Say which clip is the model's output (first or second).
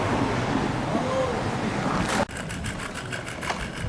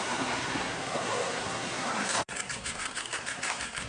second